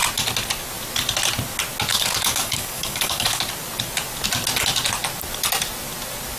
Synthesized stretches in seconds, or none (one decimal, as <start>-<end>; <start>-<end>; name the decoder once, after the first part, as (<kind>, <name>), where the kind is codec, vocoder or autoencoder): 1.9-3.4 (codec, DAC)